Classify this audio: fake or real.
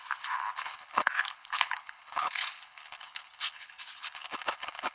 fake